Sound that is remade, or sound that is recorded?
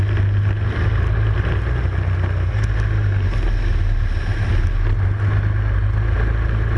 recorded